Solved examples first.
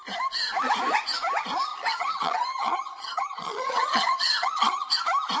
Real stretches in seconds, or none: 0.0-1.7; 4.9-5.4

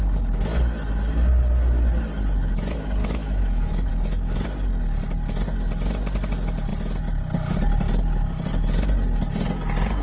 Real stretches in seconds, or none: 0.0-3.0; 3.9-10.0

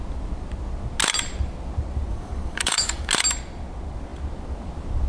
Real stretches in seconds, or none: 0.0-2.1; 3.1-5.1

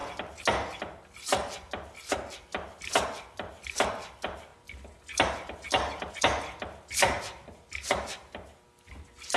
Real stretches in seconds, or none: 0.0-9.4

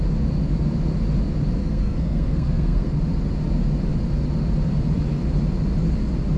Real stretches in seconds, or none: 0.0-1.6; 2.9-6.4

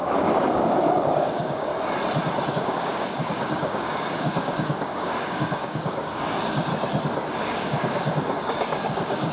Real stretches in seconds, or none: 1.7-2.5; 6.7-7.3

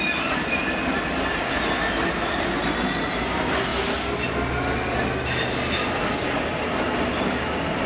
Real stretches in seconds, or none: 0.0-7.9

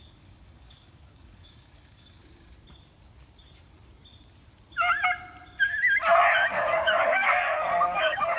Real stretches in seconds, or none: 2.2-6.5